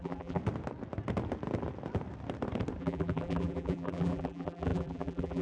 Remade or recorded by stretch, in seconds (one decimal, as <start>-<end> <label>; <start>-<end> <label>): 0.0-0.4 remade; 0.4-2.8 recorded; 2.8-5.4 remade